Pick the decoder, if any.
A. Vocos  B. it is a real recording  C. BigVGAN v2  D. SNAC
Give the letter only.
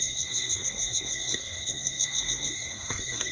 D